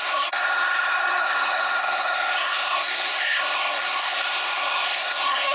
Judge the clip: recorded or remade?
remade